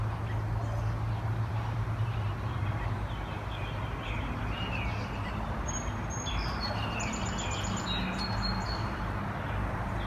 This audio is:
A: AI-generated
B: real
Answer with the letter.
B